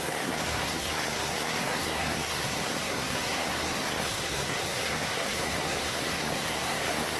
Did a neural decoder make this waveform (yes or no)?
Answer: yes